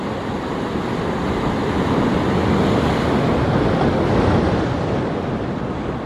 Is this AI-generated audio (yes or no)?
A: no